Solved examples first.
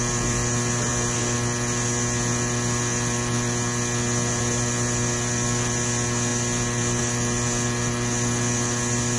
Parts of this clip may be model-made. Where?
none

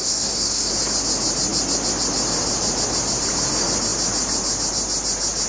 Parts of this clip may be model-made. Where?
0.0-0.7 (codec, SNAC)